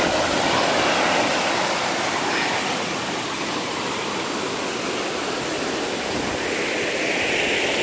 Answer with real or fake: real